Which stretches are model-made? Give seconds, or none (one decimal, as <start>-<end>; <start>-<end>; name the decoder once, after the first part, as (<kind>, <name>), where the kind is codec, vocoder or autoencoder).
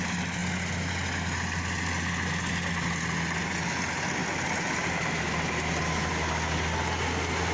none